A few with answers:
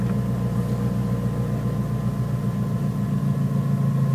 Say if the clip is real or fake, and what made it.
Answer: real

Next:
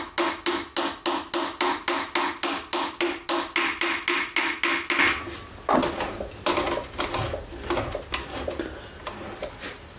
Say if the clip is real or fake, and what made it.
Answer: real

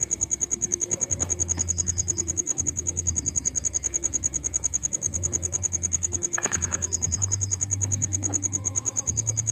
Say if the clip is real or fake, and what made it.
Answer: fake, autoencoder, DAC-VAE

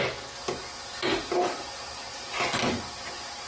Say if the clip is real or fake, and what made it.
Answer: real